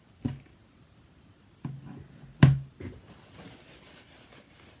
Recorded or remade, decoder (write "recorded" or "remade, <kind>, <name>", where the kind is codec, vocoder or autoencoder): recorded